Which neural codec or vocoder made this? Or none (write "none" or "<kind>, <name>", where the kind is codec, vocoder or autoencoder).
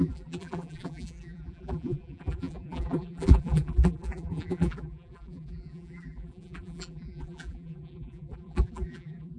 vocoder, BigVGAN v2